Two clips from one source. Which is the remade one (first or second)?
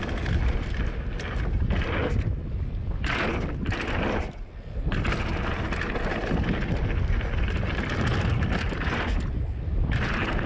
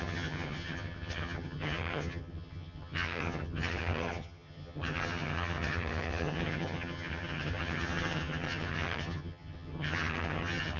second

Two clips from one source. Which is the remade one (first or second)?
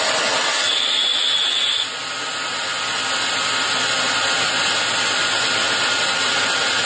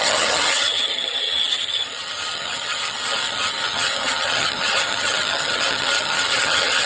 second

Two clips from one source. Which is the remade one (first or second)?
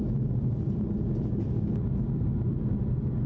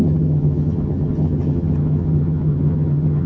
second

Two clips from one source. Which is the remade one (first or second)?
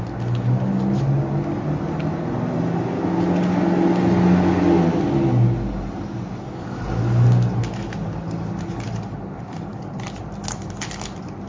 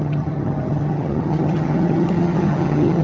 second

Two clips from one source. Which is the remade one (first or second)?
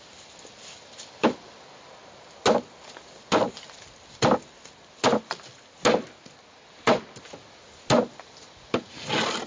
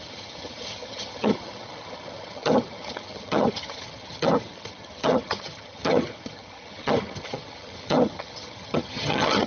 second